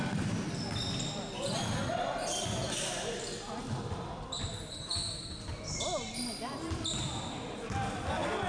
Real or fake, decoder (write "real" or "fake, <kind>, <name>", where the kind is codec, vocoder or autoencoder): real